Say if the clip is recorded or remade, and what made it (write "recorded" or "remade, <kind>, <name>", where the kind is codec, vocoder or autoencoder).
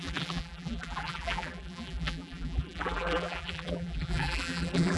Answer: remade, vocoder, BigVGAN v2